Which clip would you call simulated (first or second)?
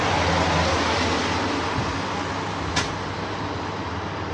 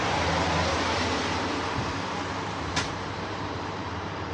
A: second